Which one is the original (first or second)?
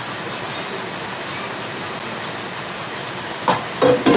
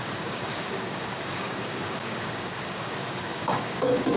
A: first